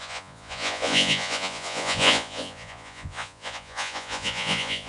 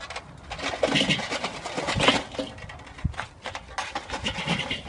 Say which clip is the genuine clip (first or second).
second